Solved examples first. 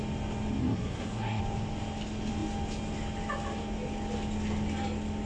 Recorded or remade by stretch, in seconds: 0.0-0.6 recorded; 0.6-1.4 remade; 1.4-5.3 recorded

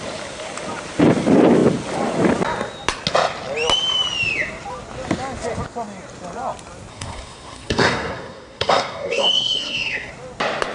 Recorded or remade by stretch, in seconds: 0.0-6.9 recorded; 6.9-10.1 remade; 10.1-10.7 recorded

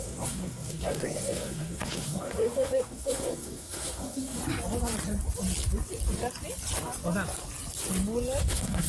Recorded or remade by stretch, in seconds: 0.0-4.4 remade; 4.4-8.4 recorded; 8.4-8.9 remade

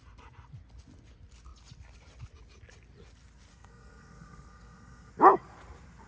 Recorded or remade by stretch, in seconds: 0.0-3.5 recorded; 3.5-5.1 remade; 5.1-6.1 recorded

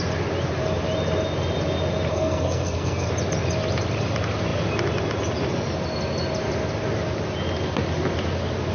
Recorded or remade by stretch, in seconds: 0.0-2.1 recorded; 2.1-3.1 remade; 3.1-8.7 recorded

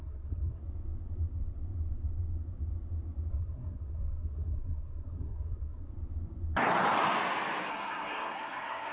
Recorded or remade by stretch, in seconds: 0.0-0.6 remade; 0.6-3.3 recorded; 3.3-5.9 remade; 5.9-7.7 recorded; 7.7-8.9 remade

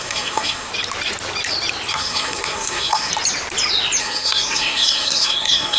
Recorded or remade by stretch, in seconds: 0.0-0.7 remade; 0.7-1.9 recorded; 1.9-3.1 remade; 3.1-4.0 recorded; 4.0-5.8 remade